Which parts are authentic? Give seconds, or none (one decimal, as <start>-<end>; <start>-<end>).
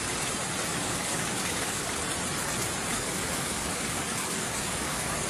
0.0-0.7; 2.0-2.9